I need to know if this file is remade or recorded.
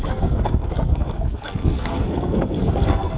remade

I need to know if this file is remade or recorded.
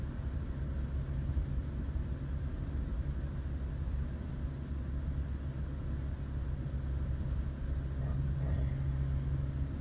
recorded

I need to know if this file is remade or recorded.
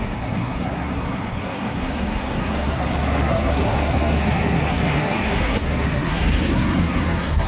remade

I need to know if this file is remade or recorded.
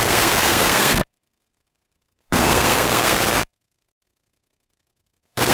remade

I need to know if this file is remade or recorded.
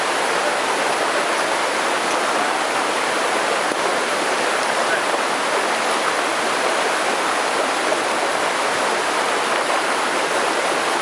recorded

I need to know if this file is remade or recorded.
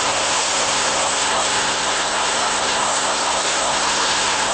remade